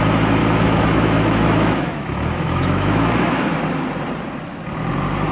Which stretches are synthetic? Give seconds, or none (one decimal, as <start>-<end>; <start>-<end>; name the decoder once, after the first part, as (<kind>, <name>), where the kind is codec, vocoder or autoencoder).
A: 0.4-3.6 (autoencoder, DAC-VAE)